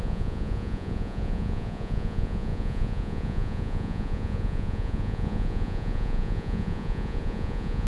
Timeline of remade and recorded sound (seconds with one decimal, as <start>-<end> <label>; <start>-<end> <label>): 0.0-7.9 remade